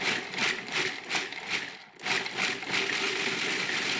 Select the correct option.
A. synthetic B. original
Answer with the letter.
B